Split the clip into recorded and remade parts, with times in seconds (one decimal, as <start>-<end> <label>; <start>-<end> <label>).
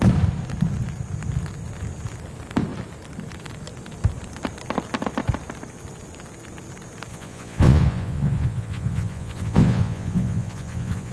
0.0-7.1 recorded; 7.1-11.1 remade